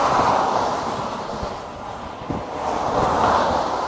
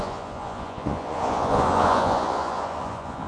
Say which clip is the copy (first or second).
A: second